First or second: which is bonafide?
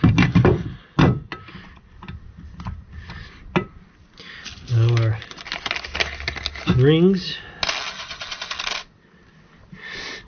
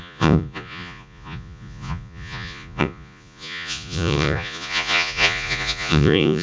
first